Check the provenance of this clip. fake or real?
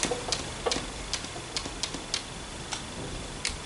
real